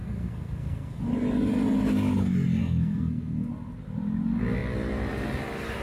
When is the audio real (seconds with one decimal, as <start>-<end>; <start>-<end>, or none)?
1.0-2.6; 3.5-5.8